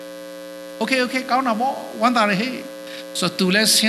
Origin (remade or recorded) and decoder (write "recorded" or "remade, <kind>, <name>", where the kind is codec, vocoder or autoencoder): recorded